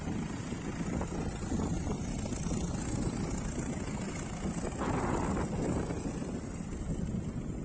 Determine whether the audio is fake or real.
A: real